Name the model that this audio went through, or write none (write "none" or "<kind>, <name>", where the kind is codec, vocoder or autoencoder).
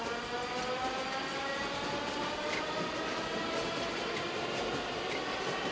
none